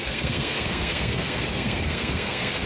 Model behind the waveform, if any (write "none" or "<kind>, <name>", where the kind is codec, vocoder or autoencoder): codec, SNAC